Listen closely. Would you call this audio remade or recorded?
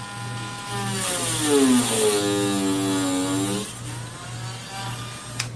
recorded